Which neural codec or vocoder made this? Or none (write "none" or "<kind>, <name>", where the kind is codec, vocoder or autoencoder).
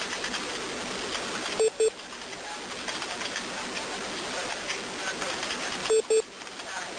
none